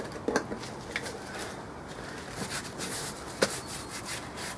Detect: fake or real real